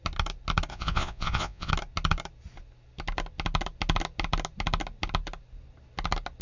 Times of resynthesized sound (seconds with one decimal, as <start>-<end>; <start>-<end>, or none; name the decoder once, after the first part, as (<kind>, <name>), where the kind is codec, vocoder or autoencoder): 0.7-1.7 (vocoder, Vocos)

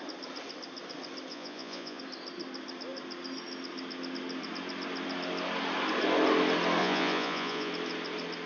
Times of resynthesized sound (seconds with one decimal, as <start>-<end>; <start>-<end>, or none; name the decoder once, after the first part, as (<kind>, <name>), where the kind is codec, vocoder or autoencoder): 1.3-2.0 (vocoder, Vocos); 6.8-7.7

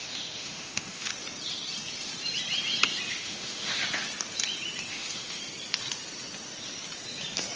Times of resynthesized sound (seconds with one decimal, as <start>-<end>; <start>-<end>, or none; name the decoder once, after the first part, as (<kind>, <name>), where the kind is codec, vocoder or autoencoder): 0.0-1.1 (autoencoder, DAC-VAE); 3.1-3.8; 4.9-5.4

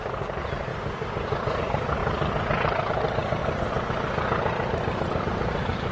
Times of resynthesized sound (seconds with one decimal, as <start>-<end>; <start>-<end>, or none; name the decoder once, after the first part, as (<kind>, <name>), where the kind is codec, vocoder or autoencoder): 0.0-0.7 (vocoder, BigVGAN v2); 1.6-2.0; 2.8-3.4; 5.2-5.9

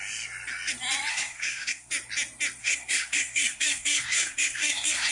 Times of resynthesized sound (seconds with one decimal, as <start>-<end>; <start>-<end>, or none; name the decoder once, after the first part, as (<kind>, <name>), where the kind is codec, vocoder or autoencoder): 1.1-1.9 (codec, SNAC); 2.6-5.1

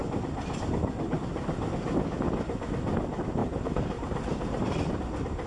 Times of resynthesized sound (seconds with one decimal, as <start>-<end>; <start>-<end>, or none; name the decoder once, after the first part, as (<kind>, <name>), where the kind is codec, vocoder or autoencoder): 3.4-4.9 (vocoder, BigVGAN v2)

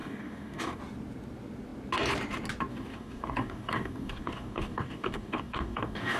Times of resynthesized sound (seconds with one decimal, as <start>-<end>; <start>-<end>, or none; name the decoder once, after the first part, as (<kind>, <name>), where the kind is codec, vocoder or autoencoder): 0.0-0.8 (codec, DAC); 2.7-6.2